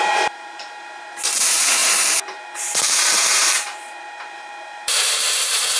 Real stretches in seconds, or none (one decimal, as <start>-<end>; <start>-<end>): none